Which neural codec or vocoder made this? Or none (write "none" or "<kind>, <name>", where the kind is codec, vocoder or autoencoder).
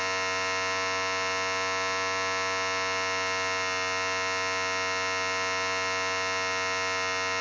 none